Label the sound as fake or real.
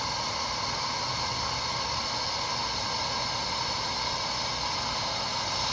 real